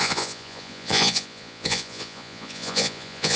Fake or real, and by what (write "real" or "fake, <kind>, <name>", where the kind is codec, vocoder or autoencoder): fake, vocoder, Vocos